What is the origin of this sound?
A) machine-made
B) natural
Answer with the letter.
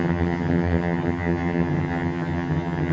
A